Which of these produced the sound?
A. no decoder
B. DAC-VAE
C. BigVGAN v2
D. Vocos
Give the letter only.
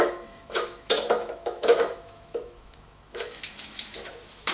B